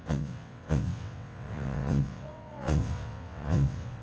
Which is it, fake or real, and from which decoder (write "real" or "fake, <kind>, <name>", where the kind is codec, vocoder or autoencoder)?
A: fake, vocoder, WaveNeXt